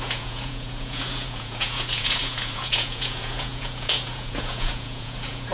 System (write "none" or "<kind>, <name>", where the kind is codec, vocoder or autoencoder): vocoder, Vocos